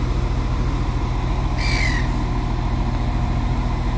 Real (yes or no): yes